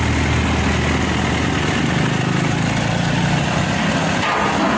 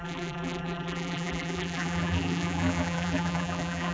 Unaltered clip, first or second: first